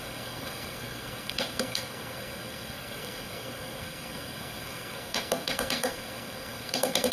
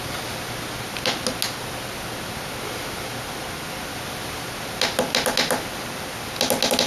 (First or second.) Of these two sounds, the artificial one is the first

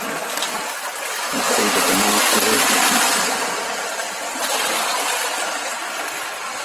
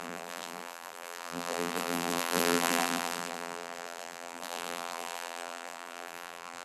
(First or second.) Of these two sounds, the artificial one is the second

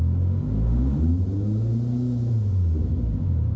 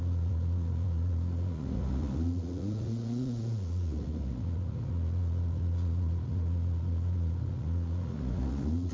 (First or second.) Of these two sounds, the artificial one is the second